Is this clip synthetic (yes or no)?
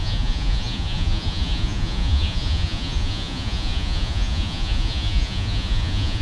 yes